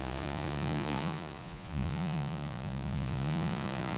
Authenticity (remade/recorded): remade